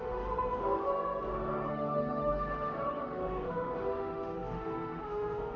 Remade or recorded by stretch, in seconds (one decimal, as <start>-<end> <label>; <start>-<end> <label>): 0.0-0.9 remade; 0.9-1.7 recorded; 1.7-5.6 remade